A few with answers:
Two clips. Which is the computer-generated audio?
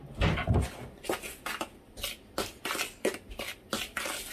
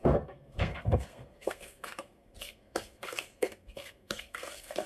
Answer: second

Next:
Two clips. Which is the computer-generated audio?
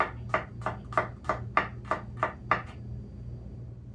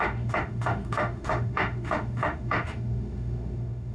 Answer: second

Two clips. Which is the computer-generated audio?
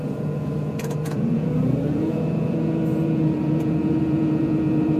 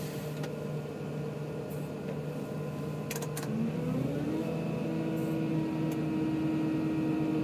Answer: first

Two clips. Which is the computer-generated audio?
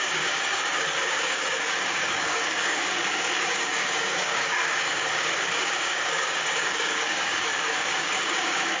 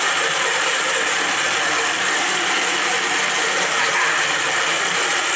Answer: first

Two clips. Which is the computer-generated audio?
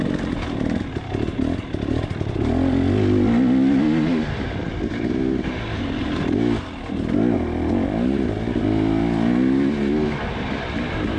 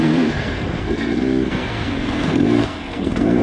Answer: second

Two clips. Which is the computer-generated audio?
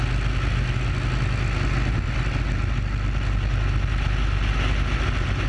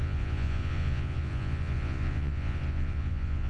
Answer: second